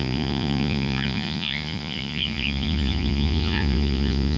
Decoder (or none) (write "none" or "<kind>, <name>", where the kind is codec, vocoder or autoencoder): vocoder, Vocos